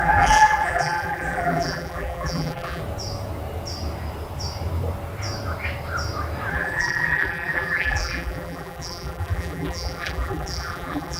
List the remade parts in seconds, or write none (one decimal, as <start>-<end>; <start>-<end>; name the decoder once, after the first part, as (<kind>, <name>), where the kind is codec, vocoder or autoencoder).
0.0-2.8 (vocoder, BigVGAN v2); 6.5-11.2